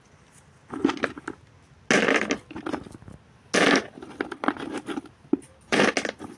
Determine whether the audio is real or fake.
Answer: real